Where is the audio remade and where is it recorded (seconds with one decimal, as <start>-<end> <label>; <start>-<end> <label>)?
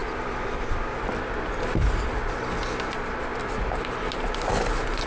0.0-2.6 remade; 2.6-5.1 recorded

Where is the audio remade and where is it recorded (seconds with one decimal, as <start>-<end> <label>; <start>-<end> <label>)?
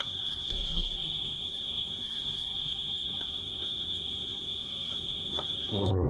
0.0-6.1 remade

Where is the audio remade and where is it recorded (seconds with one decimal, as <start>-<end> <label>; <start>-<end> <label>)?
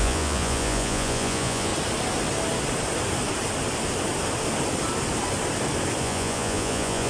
0.0-1.7 remade; 1.7-6.0 recorded; 6.0-7.1 remade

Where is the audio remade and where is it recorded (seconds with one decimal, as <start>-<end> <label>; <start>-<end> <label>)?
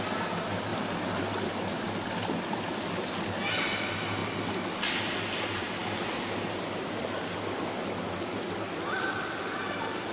0.0-10.1 recorded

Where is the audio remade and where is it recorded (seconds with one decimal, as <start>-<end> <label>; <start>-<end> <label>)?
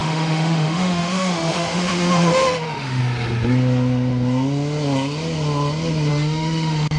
0.0-3.0 remade; 3.0-6.1 recorded; 6.1-7.0 remade